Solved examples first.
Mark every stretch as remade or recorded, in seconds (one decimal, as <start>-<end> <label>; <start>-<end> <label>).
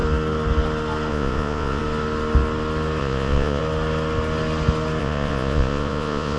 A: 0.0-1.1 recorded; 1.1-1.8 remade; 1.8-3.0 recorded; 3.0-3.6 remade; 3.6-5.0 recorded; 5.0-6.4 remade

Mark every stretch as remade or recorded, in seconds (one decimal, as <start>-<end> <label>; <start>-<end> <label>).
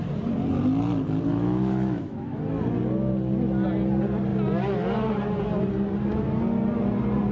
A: 0.0-1.3 recorded; 1.3-2.4 remade; 2.4-7.3 recorded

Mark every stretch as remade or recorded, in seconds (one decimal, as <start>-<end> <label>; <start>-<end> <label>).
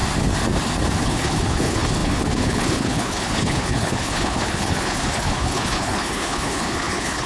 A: 0.0-1.0 recorded; 1.0-7.3 remade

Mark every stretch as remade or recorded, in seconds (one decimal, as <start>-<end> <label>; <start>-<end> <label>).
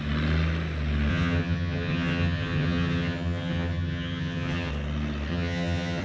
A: 0.0-1.1 recorded; 1.1-4.7 remade; 4.7-5.3 recorded; 5.3-6.0 remade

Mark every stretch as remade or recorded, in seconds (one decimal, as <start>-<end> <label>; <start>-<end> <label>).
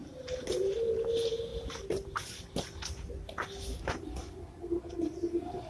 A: 0.0-5.7 recorded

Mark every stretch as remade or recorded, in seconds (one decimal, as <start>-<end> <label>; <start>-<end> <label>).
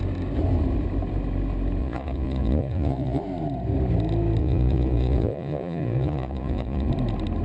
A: 0.0-1.8 recorded; 1.8-3.2 remade; 3.2-4.4 recorded; 4.4-6.9 remade; 6.9-7.4 recorded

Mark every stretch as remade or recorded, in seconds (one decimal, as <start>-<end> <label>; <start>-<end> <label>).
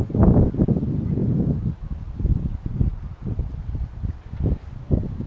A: 0.0-1.2 recorded; 1.2-1.8 remade; 1.8-5.3 recorded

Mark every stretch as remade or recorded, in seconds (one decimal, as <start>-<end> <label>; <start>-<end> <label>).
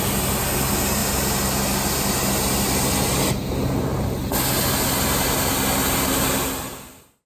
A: 0.0-7.3 recorded